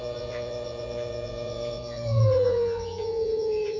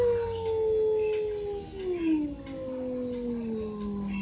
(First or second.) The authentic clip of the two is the second